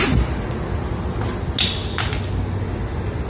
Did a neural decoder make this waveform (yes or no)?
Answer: no